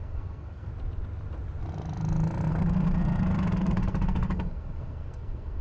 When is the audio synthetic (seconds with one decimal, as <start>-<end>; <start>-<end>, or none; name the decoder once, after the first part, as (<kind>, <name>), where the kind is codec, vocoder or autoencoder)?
0.0-0.7 (codec, SNAC); 2.5-5.6